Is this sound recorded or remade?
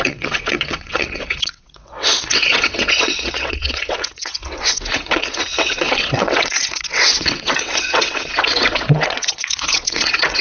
remade